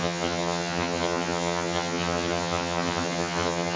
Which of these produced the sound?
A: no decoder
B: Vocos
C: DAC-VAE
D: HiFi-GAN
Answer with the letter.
D